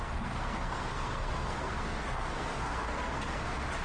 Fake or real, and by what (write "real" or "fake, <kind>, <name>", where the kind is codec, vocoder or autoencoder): fake, codec, SNAC